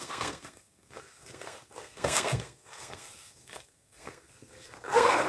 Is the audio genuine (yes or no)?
no